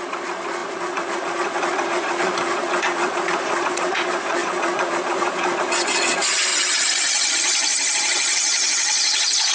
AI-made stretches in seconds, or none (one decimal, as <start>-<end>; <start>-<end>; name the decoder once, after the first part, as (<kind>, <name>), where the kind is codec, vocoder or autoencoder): 0.0-6.5 (vocoder, Vocos); 7.3-9.5